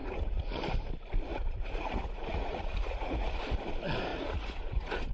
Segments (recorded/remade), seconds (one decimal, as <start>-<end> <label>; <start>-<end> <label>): 0.0-0.6 remade; 0.6-1.3 recorded; 1.3-3.4 remade; 3.4-4.1 recorded; 4.1-5.1 remade